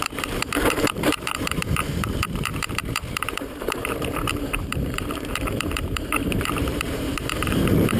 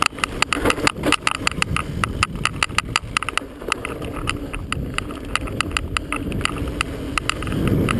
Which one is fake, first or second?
first